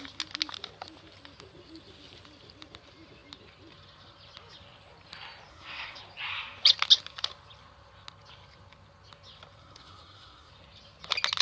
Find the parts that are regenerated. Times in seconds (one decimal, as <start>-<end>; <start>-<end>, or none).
5.5-6.0; 9.6-10.5